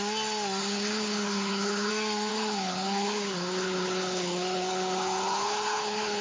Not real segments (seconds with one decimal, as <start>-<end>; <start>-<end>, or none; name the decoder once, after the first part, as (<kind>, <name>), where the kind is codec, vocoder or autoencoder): 0.6-1.9 (codec, HILCodec); 2.3-6.2